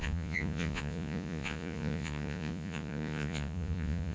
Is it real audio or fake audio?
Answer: fake